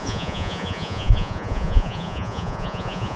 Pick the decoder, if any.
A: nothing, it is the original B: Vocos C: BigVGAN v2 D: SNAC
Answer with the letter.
B